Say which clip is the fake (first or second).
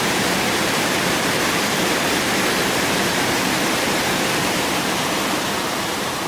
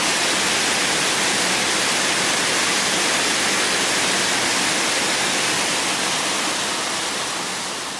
first